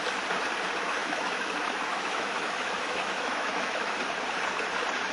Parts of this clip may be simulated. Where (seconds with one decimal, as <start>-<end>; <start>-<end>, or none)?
1.0-1.5; 1.9-4.0